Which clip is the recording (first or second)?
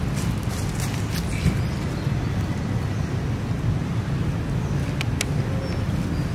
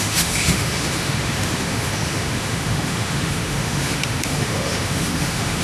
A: first